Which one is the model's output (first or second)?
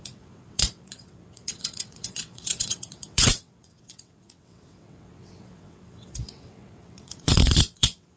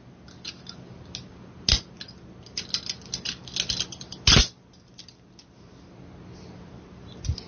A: first